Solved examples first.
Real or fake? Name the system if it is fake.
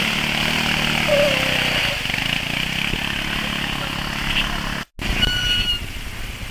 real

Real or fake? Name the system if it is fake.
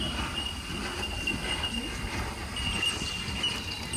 real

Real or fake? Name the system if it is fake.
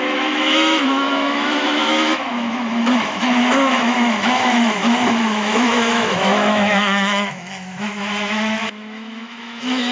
fake, autoencoder, DAC-VAE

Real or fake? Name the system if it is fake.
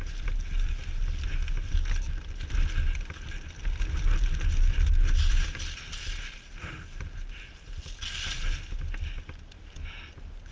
real